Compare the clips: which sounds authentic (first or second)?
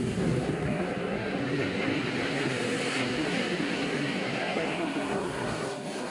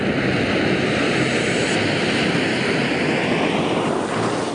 second